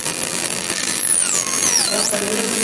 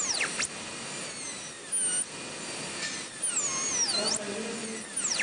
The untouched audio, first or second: second